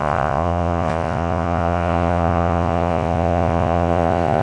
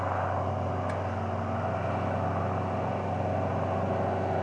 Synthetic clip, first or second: first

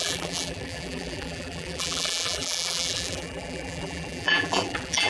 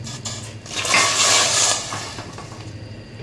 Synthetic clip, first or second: first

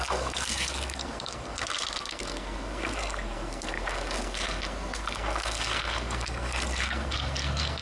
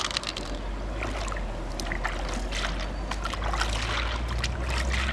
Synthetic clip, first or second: first